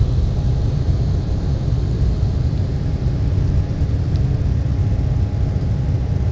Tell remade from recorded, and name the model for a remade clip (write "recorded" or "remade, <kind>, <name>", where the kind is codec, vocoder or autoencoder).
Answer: recorded